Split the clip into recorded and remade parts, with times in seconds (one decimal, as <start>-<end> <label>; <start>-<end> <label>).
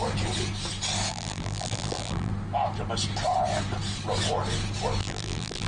0.0-1.1 recorded; 1.1-2.3 remade; 2.3-5.0 recorded; 5.0-5.7 remade